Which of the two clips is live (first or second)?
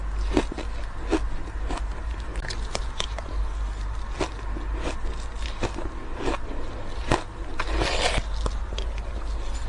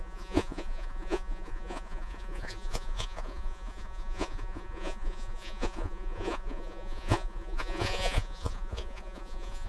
first